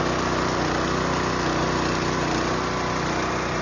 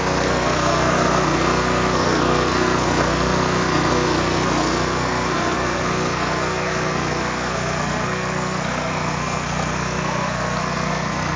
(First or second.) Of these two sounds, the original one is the first